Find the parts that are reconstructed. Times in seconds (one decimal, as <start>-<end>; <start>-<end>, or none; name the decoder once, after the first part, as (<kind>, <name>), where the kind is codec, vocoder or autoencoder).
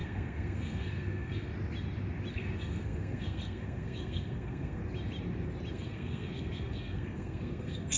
0.0-1.5 (codec, SNAC); 2.3-4.8; 5.7-8.0